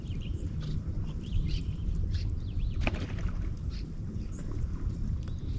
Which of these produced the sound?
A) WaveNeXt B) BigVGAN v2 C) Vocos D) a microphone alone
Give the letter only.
B